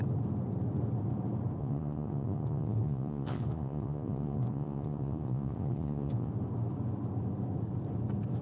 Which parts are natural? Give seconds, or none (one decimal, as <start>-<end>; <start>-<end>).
0.0-1.6; 6.3-8.4